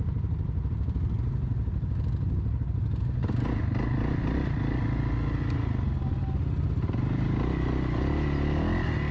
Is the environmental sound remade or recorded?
recorded